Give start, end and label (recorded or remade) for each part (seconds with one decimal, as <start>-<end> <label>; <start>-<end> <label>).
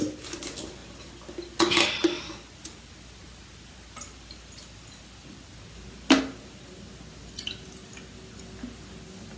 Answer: 0.0-9.4 recorded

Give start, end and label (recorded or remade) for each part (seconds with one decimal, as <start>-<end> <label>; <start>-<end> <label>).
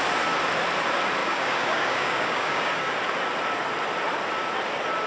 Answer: 0.0-1.2 recorded; 1.2-2.9 remade; 2.9-5.1 recorded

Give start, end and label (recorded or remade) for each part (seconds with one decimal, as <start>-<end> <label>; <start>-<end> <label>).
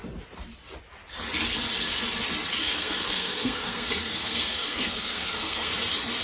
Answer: 0.0-2.6 recorded; 2.6-5.7 remade; 5.7-6.2 recorded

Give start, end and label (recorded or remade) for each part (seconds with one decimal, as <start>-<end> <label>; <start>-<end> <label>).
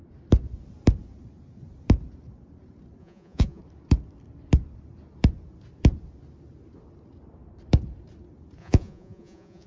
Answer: 0.0-3.0 recorded; 3.0-3.6 remade; 3.6-8.6 recorded; 8.6-9.7 remade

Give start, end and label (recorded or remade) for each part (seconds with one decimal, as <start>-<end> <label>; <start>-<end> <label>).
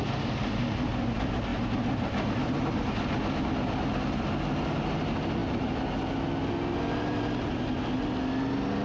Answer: 0.0-8.8 recorded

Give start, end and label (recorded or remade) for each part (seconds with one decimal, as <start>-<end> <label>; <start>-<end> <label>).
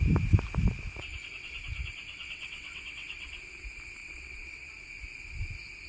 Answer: 0.0-2.2 recorded; 2.2-3.4 remade; 3.4-4.0 recorded; 4.0-4.7 remade; 4.7-5.9 recorded